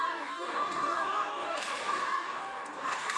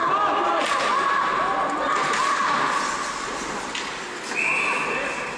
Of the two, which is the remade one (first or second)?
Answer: first